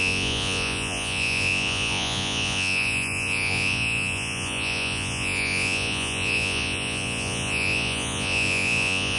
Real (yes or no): no